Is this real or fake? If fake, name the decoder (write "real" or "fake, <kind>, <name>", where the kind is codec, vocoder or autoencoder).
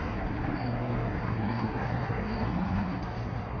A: fake, codec, SNAC